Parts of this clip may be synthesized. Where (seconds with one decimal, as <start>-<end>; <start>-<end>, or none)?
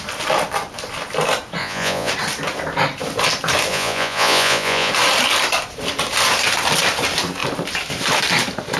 1.6-2.1; 3.7-4.9